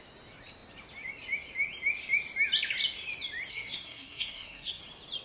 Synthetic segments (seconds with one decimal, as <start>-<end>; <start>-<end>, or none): 3.5-4.8

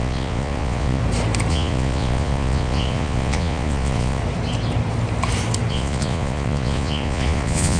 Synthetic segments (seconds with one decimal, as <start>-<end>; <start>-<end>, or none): 0.0-1.0; 1.5-4.2; 5.7-7.8

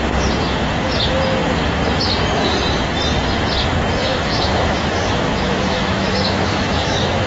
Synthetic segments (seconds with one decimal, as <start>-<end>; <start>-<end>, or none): 4.3-7.3

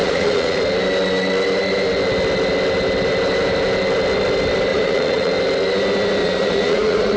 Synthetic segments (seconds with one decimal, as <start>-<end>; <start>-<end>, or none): 0.0-0.6; 4.7-5.3; 6.2-7.2